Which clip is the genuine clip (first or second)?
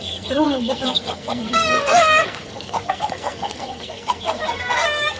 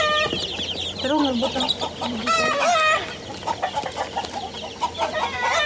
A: second